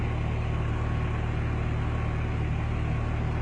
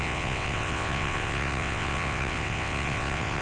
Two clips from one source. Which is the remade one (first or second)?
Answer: second